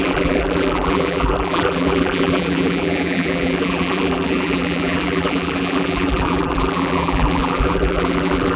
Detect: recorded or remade remade